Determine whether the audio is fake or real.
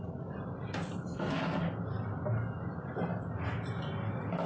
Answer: real